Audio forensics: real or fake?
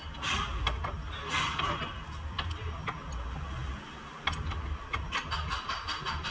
real